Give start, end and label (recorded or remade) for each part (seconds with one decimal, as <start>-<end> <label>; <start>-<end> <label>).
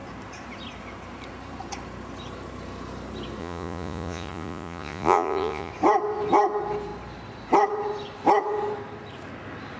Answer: 0.0-3.4 recorded; 3.4-5.7 remade; 5.7-9.8 recorded